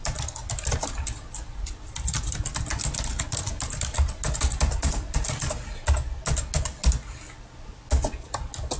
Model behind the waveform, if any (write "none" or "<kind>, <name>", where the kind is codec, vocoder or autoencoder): none